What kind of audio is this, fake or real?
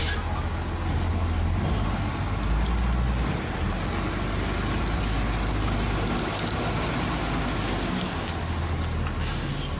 real